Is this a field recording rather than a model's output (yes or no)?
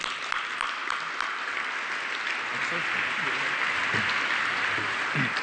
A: yes